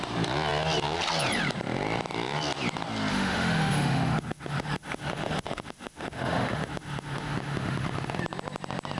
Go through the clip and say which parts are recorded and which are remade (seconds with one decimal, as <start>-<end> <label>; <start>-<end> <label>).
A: 0.0-3.1 recorded; 3.1-8.2 remade; 8.2-9.0 recorded